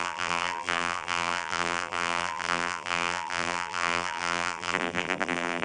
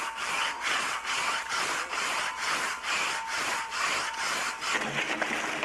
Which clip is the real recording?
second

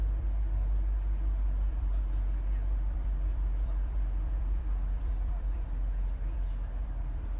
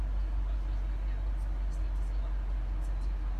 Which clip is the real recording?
second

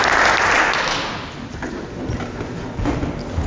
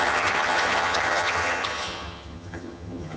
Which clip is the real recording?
first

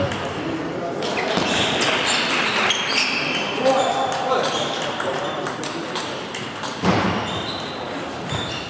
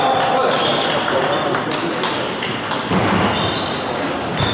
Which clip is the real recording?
second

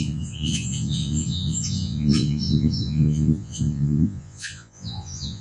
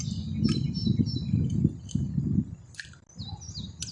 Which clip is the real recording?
second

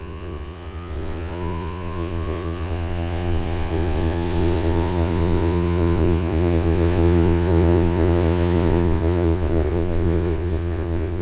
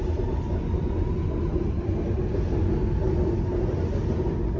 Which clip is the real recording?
second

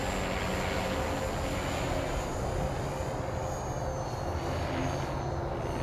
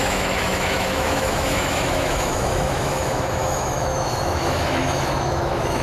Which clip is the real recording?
first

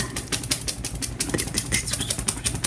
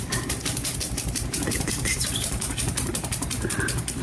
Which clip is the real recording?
first